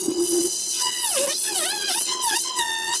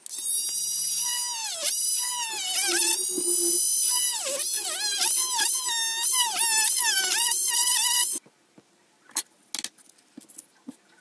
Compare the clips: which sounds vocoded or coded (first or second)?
first